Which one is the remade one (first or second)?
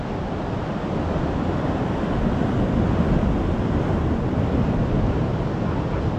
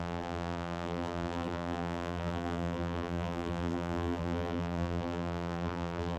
second